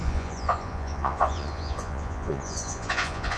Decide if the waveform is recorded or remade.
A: remade